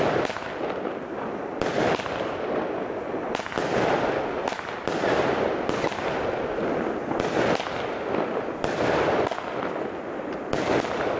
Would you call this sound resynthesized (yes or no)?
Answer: no